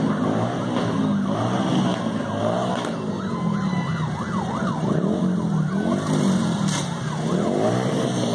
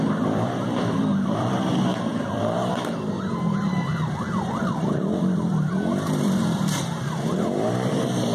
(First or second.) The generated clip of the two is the second